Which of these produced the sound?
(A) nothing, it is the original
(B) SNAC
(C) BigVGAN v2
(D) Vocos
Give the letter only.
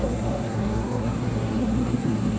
B